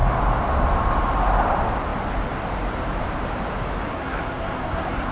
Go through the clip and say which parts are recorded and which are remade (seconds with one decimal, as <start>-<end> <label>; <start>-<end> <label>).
0.0-3.9 recorded; 3.9-5.1 remade